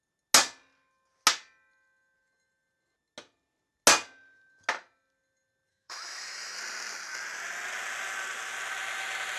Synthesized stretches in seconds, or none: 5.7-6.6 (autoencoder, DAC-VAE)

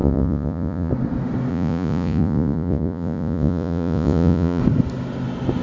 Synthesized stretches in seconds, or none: 0.0-0.9 (vocoder, Vocos); 1.5-4.6

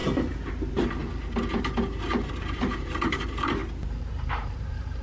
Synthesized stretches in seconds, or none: 0.5-1.0 (vocoder, BigVGAN v2); 2.0-3.6; 4.1-5.0

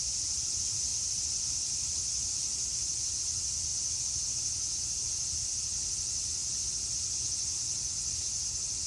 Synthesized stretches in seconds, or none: 0.0-3.7 (vocoder, BigVGAN v2); 5.9-6.4